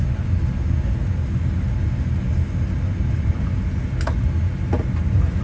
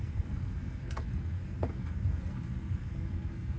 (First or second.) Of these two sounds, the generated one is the second